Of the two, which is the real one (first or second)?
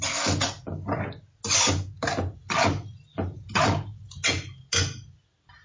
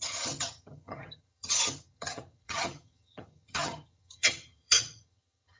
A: first